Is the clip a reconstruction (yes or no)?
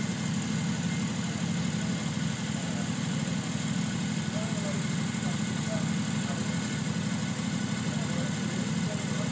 no